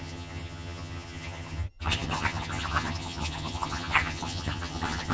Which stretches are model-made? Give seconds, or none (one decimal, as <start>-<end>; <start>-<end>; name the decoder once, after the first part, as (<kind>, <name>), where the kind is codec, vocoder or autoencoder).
0.0-5.1 (vocoder, HiFi-GAN)